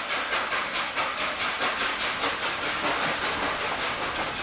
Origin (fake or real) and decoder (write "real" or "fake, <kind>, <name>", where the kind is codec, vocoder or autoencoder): real